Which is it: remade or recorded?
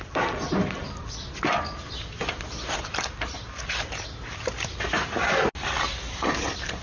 recorded